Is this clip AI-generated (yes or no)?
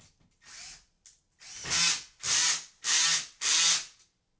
no